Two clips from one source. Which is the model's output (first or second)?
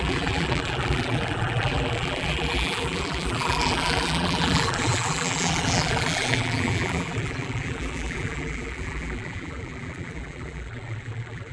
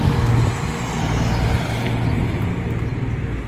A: first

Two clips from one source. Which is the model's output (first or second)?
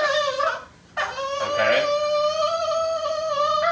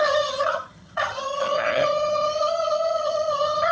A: second